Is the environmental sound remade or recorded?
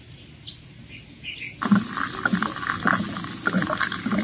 recorded